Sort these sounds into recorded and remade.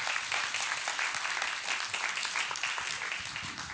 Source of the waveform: recorded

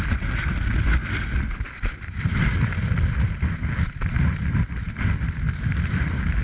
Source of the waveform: recorded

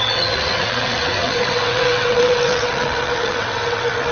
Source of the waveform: remade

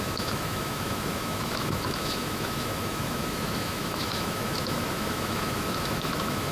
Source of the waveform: remade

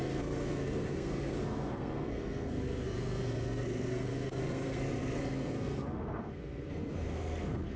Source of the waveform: remade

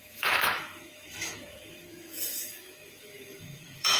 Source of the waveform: remade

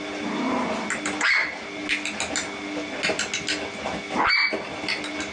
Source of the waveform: recorded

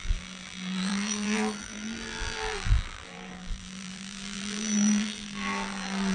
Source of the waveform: remade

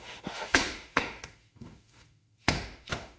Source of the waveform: remade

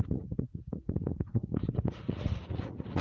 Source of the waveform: remade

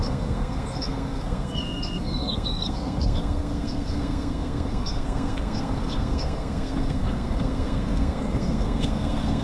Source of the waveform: remade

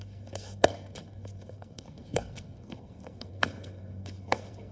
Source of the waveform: remade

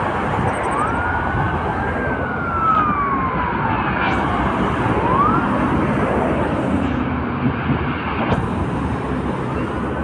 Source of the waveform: recorded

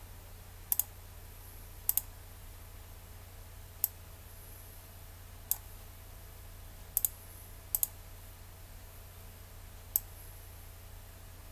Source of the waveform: recorded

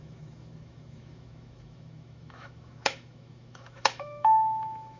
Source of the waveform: remade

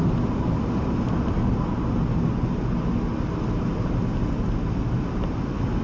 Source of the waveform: recorded